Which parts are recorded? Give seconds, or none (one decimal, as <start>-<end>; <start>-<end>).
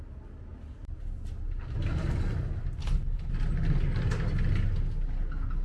0.0-2.8; 3.3-5.6